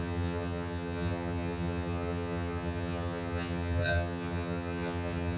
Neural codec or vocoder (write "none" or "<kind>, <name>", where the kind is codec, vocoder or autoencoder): vocoder, HiFi-GAN